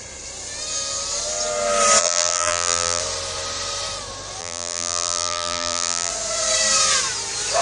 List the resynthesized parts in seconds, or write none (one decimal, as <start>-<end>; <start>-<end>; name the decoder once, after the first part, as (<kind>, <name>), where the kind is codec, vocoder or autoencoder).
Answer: 2.0-3.0 (vocoder, BigVGAN v2); 4.4-6.1